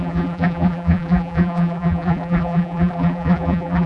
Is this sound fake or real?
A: fake